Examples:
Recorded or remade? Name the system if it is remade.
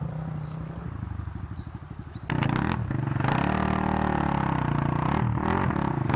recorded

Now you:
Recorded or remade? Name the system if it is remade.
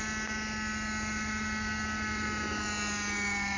recorded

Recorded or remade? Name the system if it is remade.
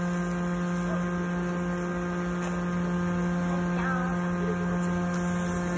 recorded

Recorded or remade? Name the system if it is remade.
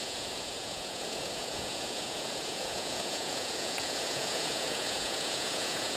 remade, vocoder, Vocos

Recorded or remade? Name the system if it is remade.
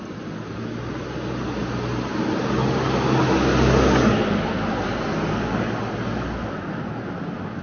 recorded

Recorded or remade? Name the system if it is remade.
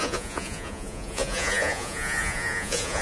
remade, vocoder, Vocos